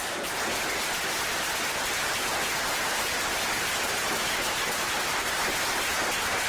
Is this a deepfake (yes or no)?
yes